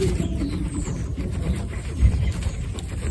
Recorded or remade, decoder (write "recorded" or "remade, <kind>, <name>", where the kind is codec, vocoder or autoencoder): remade, vocoder, BigVGAN v2